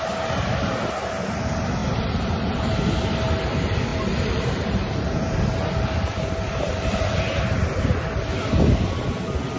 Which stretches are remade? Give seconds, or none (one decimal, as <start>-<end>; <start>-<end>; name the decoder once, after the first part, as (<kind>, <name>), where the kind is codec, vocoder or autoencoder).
1.8-2.7 (vocoder, BigVGAN v2); 3.9-6.8